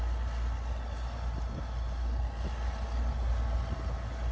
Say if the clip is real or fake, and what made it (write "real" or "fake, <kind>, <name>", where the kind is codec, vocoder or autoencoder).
real